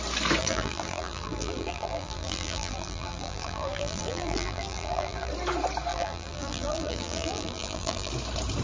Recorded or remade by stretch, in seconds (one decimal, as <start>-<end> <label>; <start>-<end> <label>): 0.0-0.4 recorded; 0.4-5.3 remade; 5.3-5.9 recorded; 5.9-8.1 remade; 8.1-8.6 recorded